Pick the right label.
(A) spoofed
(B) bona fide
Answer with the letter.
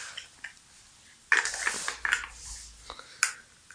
B